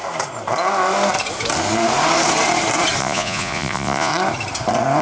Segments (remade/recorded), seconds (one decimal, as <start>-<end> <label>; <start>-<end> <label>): 0.0-3.0 recorded; 3.0-4.1 remade; 4.1-5.0 recorded